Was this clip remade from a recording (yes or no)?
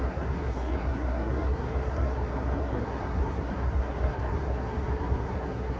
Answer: yes